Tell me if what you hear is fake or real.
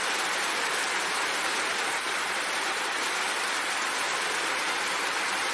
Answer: fake